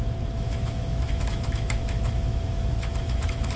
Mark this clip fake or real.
fake